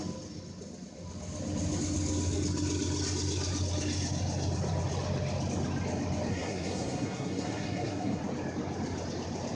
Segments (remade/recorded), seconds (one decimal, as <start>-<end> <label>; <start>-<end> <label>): 0.0-6.3 recorded; 6.3-8.2 remade; 8.2-9.5 recorded